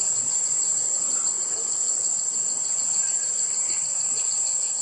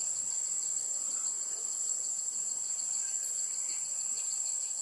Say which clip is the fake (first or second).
second